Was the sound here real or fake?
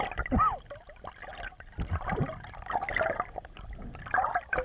real